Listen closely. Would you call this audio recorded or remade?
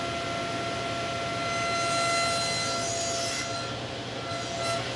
recorded